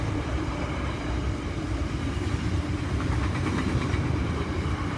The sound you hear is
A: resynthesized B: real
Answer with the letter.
A